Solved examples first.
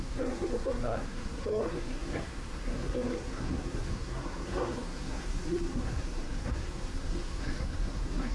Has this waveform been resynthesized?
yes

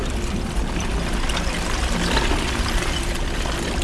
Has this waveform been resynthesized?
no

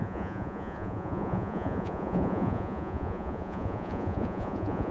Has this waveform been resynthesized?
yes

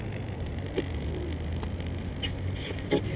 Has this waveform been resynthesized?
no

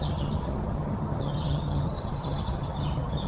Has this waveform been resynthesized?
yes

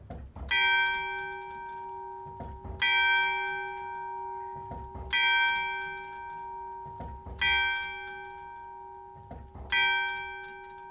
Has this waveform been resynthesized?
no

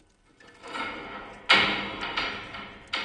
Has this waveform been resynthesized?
no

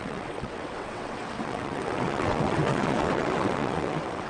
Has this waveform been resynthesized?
yes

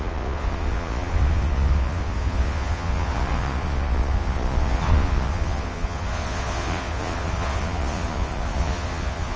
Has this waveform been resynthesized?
yes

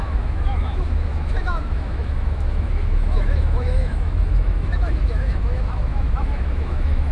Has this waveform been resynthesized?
yes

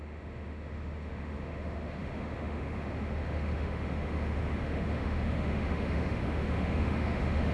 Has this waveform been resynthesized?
yes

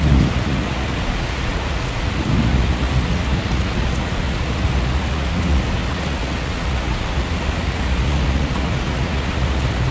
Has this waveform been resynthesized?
yes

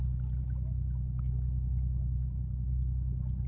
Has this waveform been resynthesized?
no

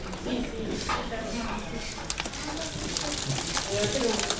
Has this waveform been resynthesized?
no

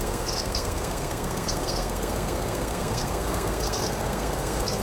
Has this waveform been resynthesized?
yes